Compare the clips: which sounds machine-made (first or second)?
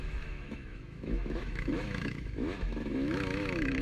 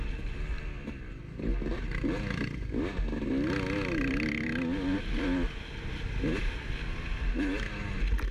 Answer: first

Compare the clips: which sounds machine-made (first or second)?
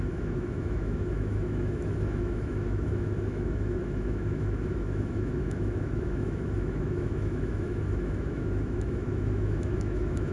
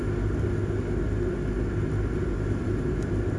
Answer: first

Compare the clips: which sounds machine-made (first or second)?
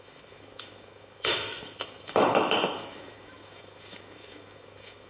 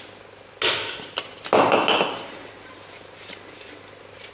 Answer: first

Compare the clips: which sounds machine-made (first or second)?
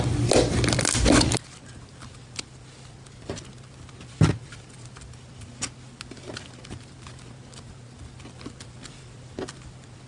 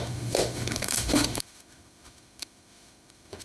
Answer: second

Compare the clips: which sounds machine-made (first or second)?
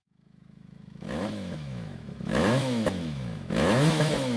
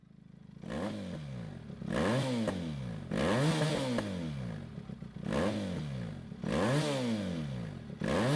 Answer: first